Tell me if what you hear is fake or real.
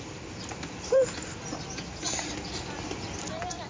real